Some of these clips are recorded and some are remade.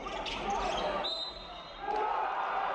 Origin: recorded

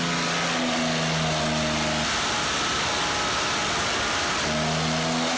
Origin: recorded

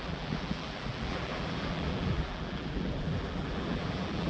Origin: remade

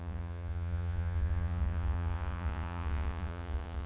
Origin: remade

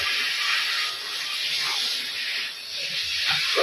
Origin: recorded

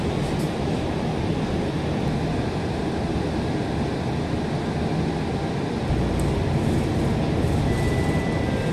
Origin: recorded